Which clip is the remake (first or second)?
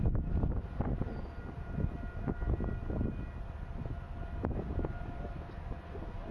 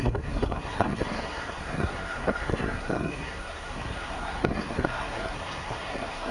second